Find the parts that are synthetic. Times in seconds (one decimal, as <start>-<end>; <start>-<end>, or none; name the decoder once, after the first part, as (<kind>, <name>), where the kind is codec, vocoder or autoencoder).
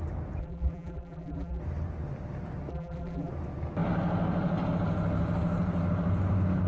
0.4-1.6 (vocoder, BigVGAN v2); 2.7-3.3